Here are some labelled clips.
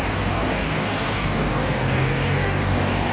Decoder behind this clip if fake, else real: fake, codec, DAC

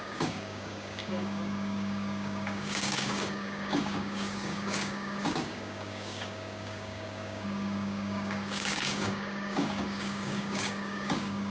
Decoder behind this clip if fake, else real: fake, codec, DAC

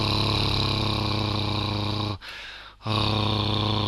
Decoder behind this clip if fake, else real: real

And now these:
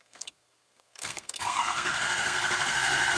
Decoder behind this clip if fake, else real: fake, codec, SNAC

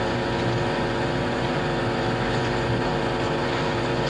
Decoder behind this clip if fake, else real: fake, vocoder, Vocos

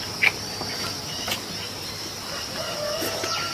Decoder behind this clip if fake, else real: real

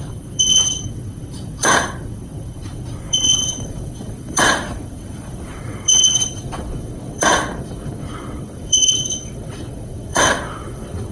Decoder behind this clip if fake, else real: fake, vocoder, WaveNeXt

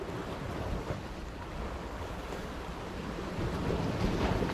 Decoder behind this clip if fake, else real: real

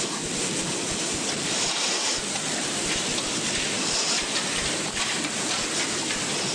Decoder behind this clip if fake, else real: fake, vocoder, BigVGAN v2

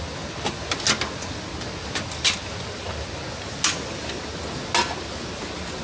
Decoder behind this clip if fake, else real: real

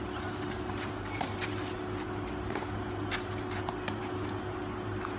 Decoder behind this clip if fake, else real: real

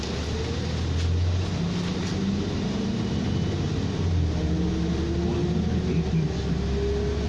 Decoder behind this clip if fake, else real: real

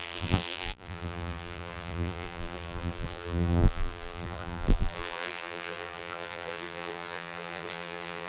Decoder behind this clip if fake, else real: fake, vocoder, BigVGAN v2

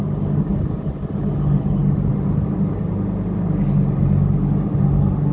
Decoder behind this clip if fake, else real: real